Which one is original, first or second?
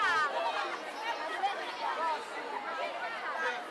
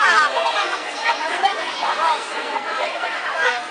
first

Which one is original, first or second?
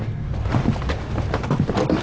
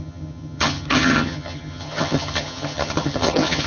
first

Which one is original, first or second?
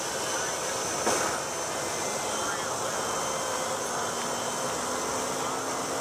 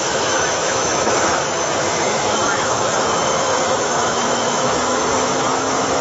first